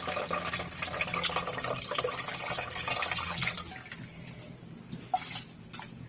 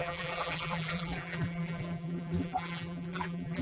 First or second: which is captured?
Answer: first